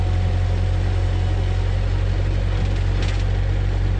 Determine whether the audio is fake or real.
real